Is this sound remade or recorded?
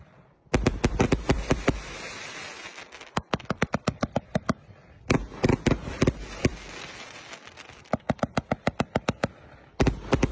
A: recorded